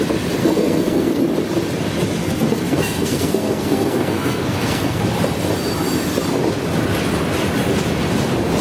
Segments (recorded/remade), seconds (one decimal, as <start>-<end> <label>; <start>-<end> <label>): 0.0-0.4 recorded; 0.4-1.2 remade; 1.2-2.2 recorded; 2.2-5.0 remade; 5.0-8.6 recorded